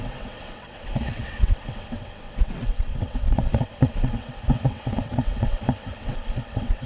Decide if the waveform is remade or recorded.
remade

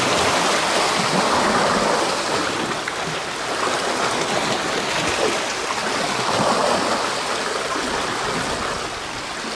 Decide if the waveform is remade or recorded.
recorded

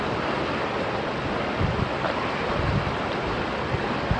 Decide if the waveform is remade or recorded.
recorded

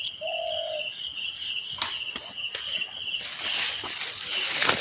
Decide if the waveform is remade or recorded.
recorded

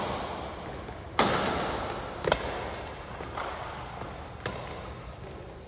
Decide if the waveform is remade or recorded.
recorded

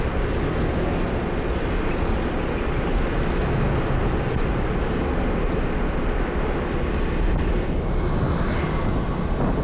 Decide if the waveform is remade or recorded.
recorded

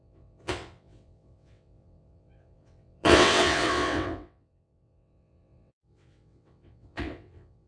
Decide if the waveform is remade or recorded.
remade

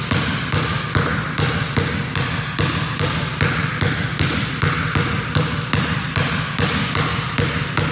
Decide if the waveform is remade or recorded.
recorded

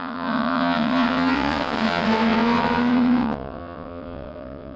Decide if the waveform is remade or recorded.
remade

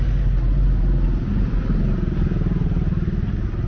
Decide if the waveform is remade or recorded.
recorded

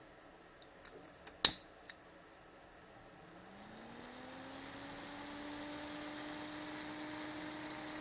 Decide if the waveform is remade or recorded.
recorded